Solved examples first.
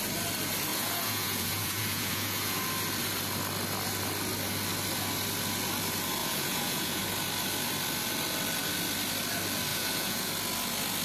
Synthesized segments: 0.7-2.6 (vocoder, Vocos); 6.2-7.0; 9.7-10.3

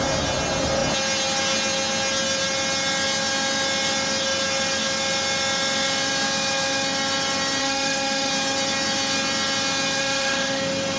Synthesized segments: 7.6-8.3 (autoencoder, DAC-VAE); 10.0-10.6

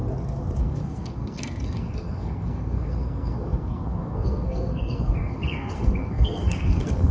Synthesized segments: 0.6-7.1 (codec, SNAC)

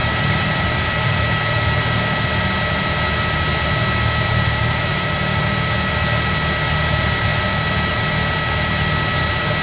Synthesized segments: 0.0-1.2 (vocoder, BigVGAN v2); 4.6-5.7

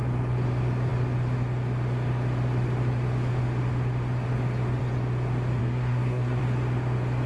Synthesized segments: 5.6-6.4 (codec, SNAC)